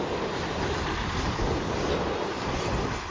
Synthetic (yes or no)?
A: no